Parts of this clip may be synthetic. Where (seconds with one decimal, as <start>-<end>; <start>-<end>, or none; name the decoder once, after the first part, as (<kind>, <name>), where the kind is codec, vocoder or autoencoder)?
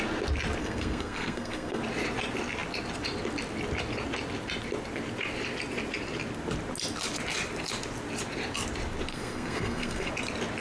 0.6-1.8 (codec, SNAC); 9.1-10.1